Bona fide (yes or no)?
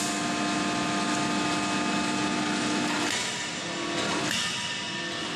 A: yes